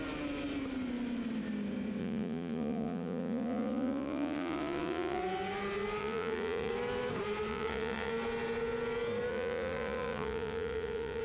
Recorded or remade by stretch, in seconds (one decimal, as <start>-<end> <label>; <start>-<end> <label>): 0.0-2.0 recorded; 2.0-5.2 remade; 5.2-6.0 recorded; 6.0-6.7 remade; 6.7-7.5 recorded; 7.5-8.1 remade; 8.1-9.3 recorded; 9.3-11.2 remade